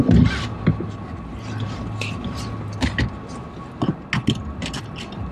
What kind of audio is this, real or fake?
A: real